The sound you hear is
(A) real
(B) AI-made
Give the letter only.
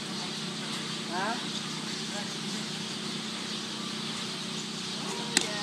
A